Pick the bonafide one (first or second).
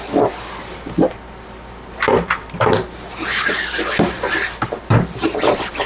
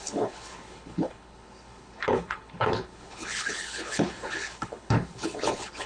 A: first